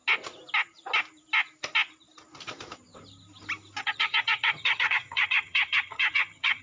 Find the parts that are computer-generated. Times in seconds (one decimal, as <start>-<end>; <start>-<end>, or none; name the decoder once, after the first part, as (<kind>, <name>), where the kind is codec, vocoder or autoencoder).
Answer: 3.8-6.6 (vocoder, HiFi-GAN)